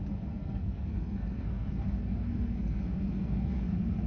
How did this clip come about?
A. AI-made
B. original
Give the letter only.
A